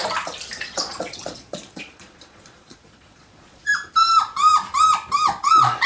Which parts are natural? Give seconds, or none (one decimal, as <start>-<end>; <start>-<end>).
0.0-0.6; 3.7-5.4

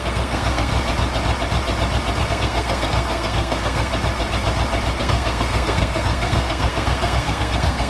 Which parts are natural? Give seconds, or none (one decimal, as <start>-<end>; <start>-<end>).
0.7-2.3; 3.9-5.0

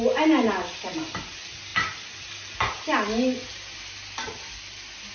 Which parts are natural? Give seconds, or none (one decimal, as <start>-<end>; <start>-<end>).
0.0-5.1

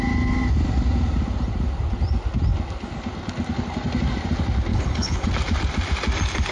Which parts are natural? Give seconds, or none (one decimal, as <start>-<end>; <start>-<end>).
0.0-4.7; 5.3-6.5

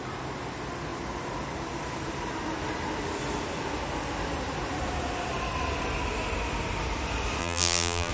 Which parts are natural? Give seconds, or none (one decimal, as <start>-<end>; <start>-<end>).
0.0-7.4

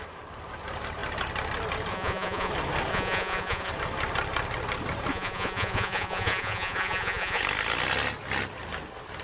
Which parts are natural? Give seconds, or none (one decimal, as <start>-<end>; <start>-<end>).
0.0-1.9; 2.5-2.9; 3.7-5.1; 7.4-9.2

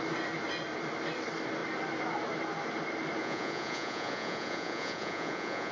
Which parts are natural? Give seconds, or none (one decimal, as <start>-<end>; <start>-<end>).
0.0-3.2